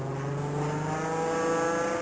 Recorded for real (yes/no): yes